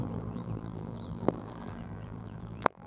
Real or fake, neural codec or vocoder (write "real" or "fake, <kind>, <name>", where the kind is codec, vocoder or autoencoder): fake, vocoder, BigVGAN v2